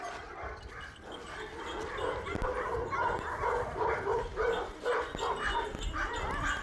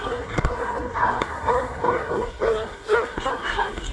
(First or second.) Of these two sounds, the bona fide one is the first